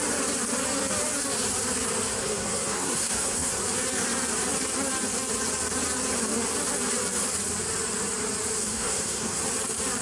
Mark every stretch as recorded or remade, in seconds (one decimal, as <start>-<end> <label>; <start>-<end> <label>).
0.0-2.2 recorded; 2.2-3.6 remade; 3.6-8.6 recorded; 8.6-9.4 remade; 9.4-10.0 recorded